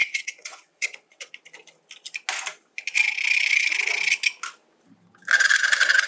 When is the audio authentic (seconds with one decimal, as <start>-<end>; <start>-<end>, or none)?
1.3-6.1